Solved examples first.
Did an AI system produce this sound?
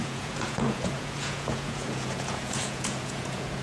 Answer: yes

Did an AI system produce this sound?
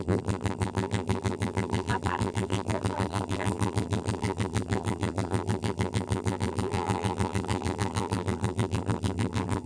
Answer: yes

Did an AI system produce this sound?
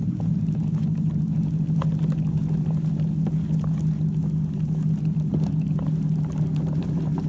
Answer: no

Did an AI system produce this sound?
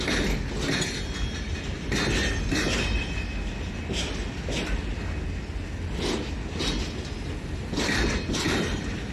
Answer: no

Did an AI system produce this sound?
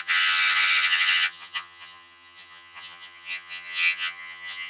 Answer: yes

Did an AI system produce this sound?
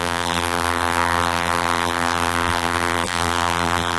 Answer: yes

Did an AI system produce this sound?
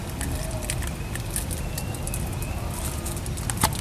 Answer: no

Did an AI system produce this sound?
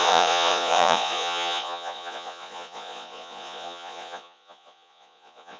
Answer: yes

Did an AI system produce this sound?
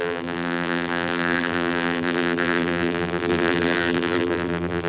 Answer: yes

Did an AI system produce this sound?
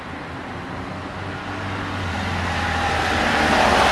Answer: no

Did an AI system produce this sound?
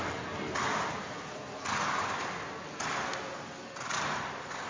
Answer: no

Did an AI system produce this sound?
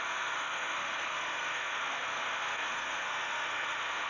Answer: yes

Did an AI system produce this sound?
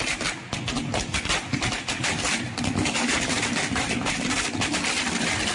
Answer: no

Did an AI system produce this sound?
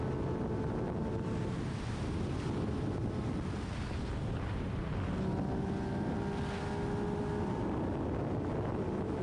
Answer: no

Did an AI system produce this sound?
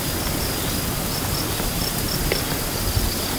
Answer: no